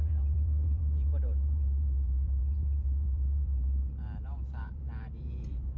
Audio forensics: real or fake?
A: fake